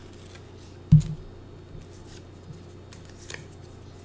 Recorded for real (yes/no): yes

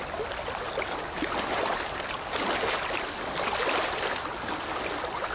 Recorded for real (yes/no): yes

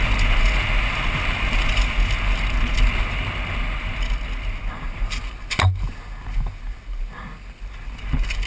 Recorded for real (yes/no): yes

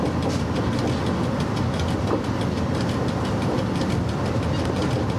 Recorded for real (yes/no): yes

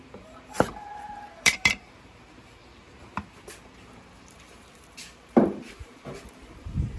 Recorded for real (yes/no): no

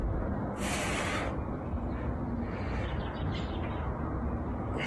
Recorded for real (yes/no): yes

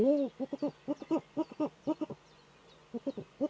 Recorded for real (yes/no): no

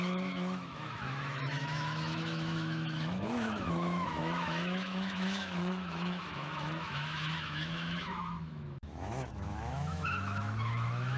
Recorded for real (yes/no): no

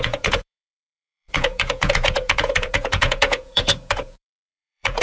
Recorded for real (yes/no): no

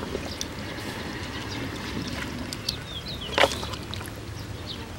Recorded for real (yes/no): yes